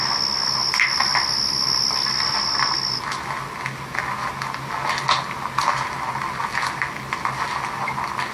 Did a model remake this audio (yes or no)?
no